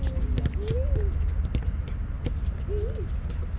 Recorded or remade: recorded